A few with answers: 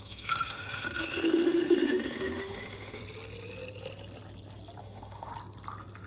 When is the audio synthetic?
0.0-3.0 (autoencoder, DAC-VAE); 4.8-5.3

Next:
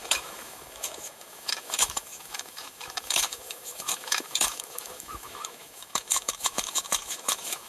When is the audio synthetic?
0.0-7.7 (autoencoder, DAC-VAE)